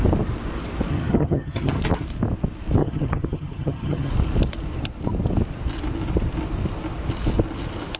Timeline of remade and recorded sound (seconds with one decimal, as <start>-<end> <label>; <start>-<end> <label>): 0.0-0.9 recorded; 0.9-1.8 remade; 1.8-2.8 recorded; 2.8-4.1 remade; 4.1-8.0 recorded